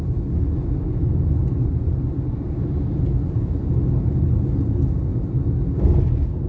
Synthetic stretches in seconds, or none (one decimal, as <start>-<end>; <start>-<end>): 1.4-3.6